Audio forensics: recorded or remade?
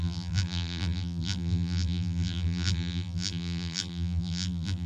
remade